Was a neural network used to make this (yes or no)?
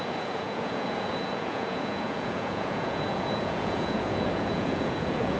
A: yes